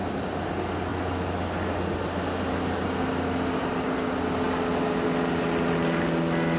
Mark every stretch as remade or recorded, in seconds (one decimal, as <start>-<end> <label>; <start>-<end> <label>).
0.0-6.6 recorded